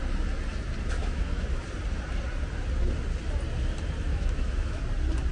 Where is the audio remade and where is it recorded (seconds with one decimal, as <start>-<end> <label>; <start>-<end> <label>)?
0.0-1.0 recorded; 1.0-1.6 remade; 1.6-4.1 recorded; 4.1-4.8 remade; 4.8-5.3 recorded